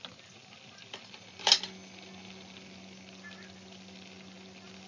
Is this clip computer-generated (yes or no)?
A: no